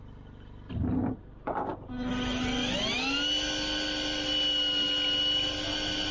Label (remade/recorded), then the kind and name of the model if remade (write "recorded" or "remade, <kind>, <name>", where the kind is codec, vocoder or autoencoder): recorded